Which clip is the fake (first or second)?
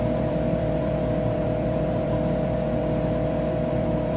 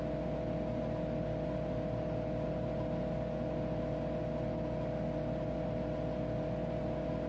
first